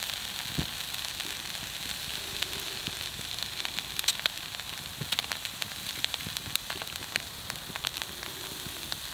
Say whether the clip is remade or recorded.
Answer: recorded